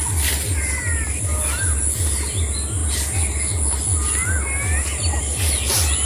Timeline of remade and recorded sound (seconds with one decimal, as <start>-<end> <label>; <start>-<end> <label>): 0.0-6.1 recorded